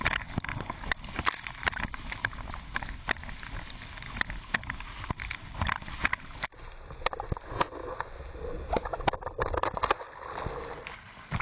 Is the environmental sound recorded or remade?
recorded